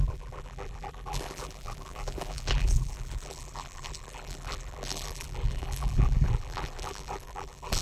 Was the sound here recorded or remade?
remade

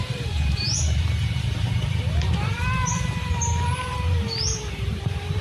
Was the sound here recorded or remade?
remade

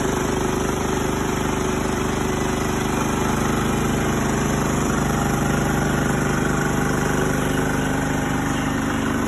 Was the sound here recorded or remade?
remade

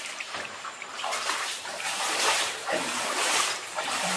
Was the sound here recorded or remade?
remade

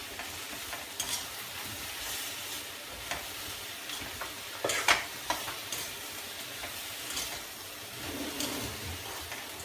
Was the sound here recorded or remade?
recorded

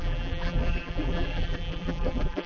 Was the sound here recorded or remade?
remade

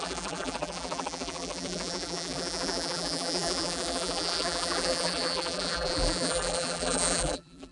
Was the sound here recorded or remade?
remade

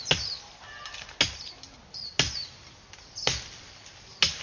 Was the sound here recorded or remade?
recorded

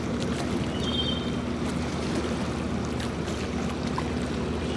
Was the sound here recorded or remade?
recorded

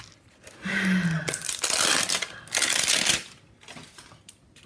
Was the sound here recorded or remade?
recorded